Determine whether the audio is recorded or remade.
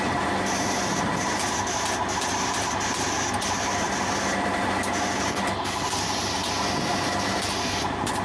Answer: recorded